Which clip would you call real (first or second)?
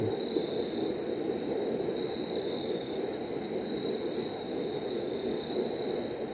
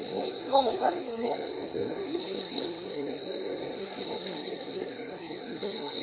first